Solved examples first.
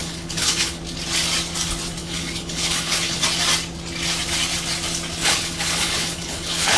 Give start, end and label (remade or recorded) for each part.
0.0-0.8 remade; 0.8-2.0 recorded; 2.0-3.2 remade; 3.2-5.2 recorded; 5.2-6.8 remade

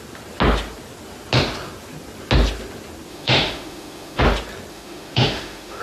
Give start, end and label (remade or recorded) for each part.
0.0-3.1 recorded; 3.1-4.2 remade; 4.2-4.7 recorded; 4.7-5.8 remade

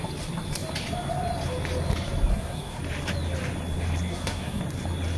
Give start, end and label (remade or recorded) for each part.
0.0-2.3 recorded; 2.3-2.8 remade; 2.8-4.1 recorded; 4.1-4.6 remade; 4.6-5.2 recorded

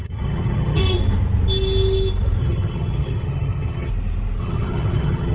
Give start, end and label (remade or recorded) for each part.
0.0-0.8 remade; 0.8-2.4 recorded; 2.4-3.9 remade; 3.9-4.4 recorded; 4.4-5.3 remade